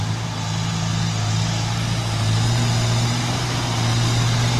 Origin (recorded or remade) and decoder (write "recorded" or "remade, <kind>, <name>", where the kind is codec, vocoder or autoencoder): recorded